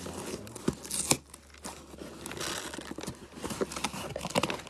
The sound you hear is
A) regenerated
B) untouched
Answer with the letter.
B